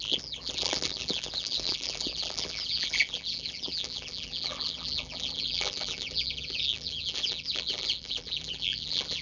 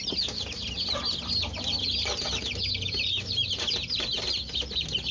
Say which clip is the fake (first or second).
first